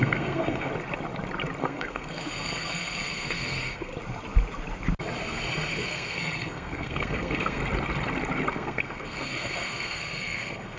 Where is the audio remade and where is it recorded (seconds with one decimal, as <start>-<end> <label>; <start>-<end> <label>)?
0.0-0.7 remade; 0.7-1.6 recorded; 1.6-3.9 remade; 3.9-5.7 recorded; 5.7-7.6 remade; 7.6-8.5 recorded; 8.5-10.8 remade